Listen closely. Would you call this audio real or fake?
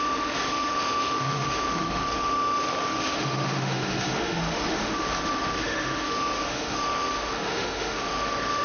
fake